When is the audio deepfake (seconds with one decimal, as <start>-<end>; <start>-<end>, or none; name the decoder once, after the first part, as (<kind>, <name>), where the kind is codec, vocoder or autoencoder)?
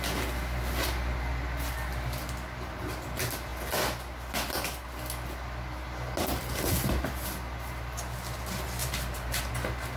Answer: 8.8-9.4 (vocoder, BigVGAN v2)